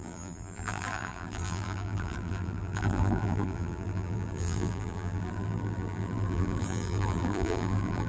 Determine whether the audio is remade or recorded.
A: remade